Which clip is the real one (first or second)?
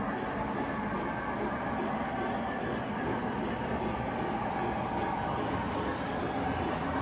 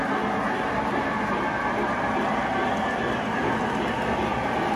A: second